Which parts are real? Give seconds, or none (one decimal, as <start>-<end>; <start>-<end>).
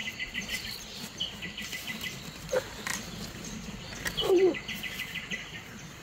0.0-1.2; 2.9-4.3